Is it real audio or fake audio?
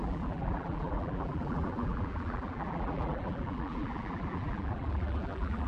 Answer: fake